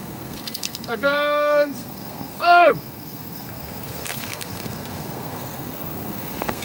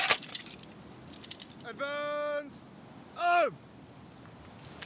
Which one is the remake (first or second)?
first